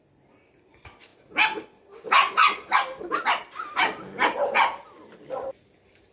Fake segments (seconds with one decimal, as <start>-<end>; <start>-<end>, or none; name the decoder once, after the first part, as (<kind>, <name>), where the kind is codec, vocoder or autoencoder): none